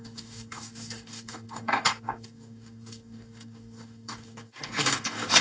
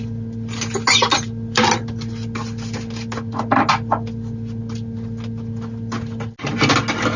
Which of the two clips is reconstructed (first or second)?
first